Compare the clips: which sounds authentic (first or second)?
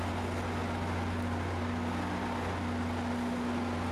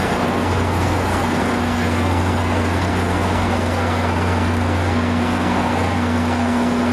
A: first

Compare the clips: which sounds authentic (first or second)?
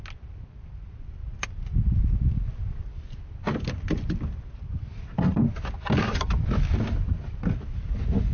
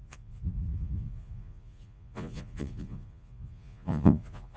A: first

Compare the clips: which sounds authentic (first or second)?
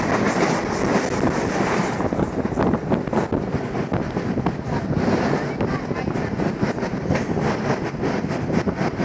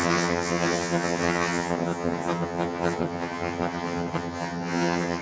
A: first